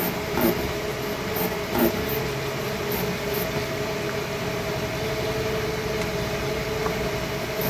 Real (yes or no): yes